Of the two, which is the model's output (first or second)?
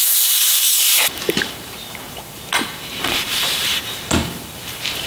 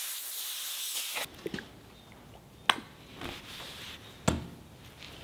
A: first